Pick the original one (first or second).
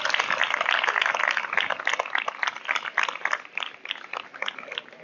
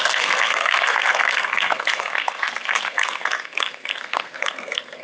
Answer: first